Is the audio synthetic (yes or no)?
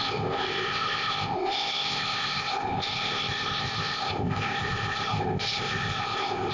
yes